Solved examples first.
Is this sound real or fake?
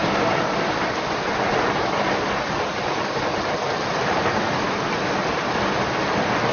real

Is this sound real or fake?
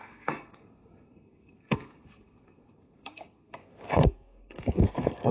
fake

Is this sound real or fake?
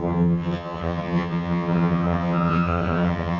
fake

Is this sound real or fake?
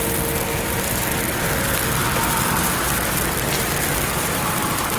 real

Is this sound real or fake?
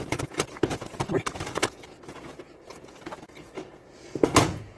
fake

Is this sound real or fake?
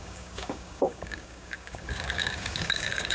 fake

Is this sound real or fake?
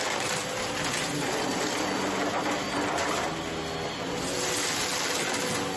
real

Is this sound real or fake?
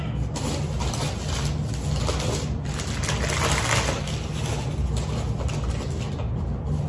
real